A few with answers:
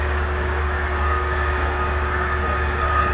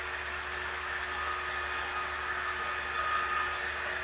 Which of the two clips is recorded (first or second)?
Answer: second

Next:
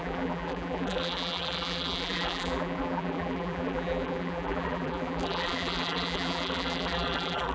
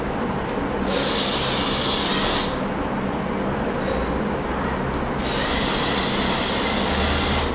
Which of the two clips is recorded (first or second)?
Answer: second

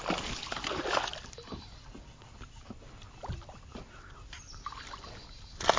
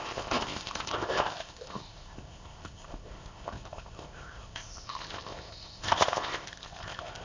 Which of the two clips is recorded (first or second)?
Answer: first